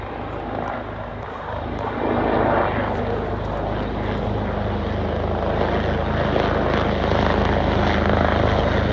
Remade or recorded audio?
recorded